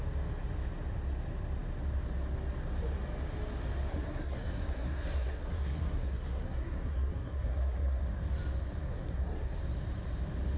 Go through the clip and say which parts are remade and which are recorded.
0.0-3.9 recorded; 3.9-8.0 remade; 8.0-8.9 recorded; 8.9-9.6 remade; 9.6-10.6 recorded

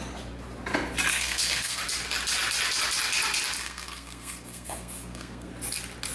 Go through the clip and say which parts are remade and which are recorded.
0.0-1.1 recorded; 1.1-1.8 remade; 1.8-3.6 recorded; 3.6-5.5 remade; 5.5-6.1 recorded

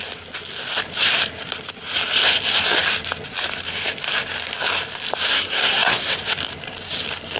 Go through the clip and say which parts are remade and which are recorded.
0.0-5.3 recorded; 5.3-6.1 remade; 6.1-7.4 recorded

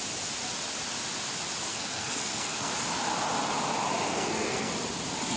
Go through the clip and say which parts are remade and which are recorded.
0.0-1.7 recorded; 1.7-2.7 remade; 2.7-4.1 recorded; 4.1-4.7 remade; 4.7-5.4 recorded